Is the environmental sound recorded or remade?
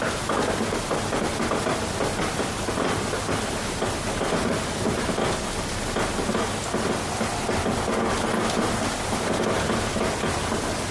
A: recorded